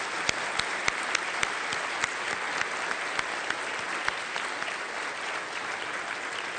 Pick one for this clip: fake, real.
real